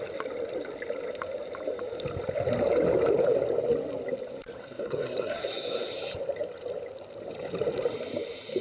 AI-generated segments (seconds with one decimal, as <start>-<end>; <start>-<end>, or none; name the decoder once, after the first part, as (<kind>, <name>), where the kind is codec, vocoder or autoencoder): 4.6-5.9 (codec, SNAC)